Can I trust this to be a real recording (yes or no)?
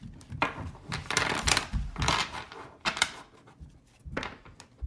yes